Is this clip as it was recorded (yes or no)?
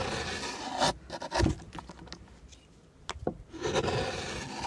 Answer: yes